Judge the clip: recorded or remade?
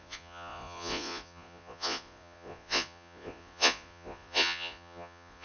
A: remade